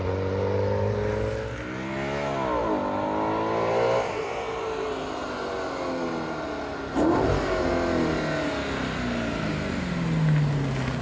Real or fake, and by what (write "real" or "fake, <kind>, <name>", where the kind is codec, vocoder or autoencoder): real